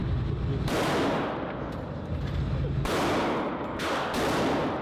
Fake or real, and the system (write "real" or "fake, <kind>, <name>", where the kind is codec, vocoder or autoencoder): real